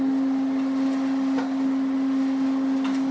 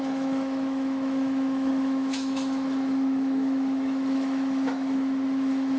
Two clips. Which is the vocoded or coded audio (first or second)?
second